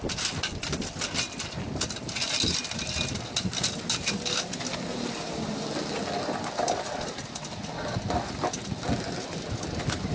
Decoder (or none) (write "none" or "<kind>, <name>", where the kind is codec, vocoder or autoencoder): none